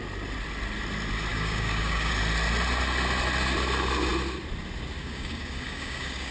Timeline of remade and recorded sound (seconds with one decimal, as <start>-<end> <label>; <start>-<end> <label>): 0.0-1.3 recorded; 1.3-2.1 remade; 2.1-5.0 recorded; 5.0-6.3 remade

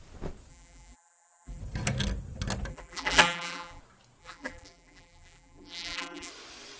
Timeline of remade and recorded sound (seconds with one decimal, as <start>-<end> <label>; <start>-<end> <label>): 0.0-0.5 recorded; 0.5-1.6 remade; 1.6-2.7 recorded; 2.7-3.8 remade; 3.8-4.2 recorded; 4.2-6.3 remade; 6.3-6.8 recorded

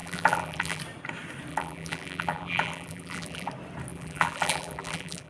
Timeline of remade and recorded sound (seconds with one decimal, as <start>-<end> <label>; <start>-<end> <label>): 0.0-0.8 remade; 0.8-1.5 recorded; 1.5-3.5 remade; 3.5-3.9 recorded; 3.9-5.3 remade